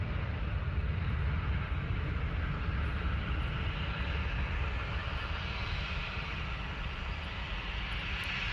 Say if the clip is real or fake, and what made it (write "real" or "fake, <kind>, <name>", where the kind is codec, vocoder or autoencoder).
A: real